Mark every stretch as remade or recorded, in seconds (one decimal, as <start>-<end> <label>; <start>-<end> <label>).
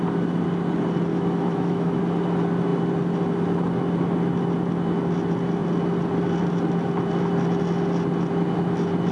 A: 0.0-1.1 recorded; 1.1-2.0 remade; 2.0-9.1 recorded